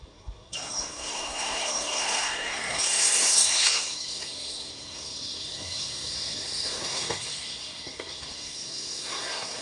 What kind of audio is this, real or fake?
fake